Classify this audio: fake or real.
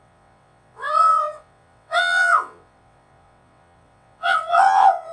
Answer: fake